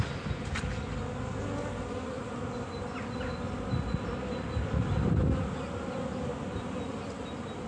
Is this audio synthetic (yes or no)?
no